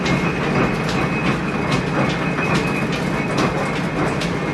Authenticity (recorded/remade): recorded